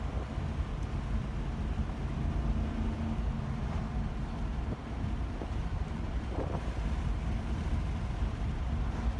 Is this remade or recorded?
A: recorded